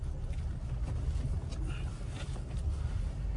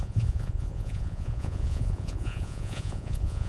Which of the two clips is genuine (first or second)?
first